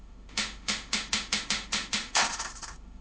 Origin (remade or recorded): remade